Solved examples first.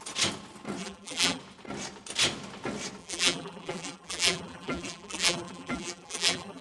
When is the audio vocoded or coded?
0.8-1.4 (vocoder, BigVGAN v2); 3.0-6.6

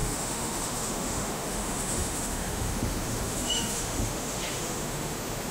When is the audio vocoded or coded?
0.0-5.5 (autoencoder, DAC-VAE)

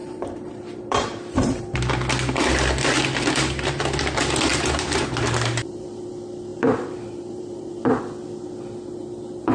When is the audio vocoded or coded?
0.0-1.6 (vocoder, BigVGAN v2); 4.5-6.1; 6.5-8.0

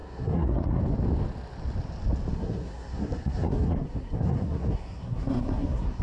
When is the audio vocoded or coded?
0.0-0.8 (codec, SNAC); 2.3-6.0

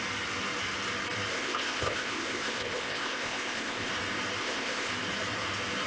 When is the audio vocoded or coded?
1.3-3.9 (codec, ZipCodec); 4.4-4.9

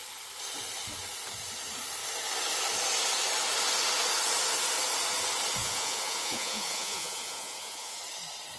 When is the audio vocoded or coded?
5.6-8.0 (vocoder, Vocos)

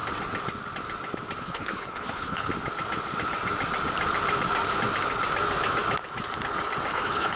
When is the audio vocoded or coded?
1.4-2.5 (codec, HILCodec); 6.9-7.4

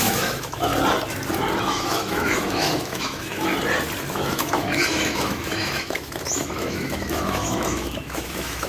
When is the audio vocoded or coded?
0.0-0.7 (autoencoder, DAC-VAE); 1.6-3.5; 4.1-8.7